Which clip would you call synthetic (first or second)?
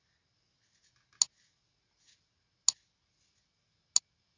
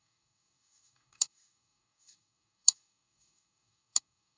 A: second